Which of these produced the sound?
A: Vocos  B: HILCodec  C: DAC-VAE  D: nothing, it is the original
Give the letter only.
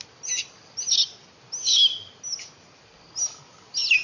D